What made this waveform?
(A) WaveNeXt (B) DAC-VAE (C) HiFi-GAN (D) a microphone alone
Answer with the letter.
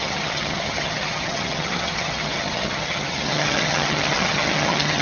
C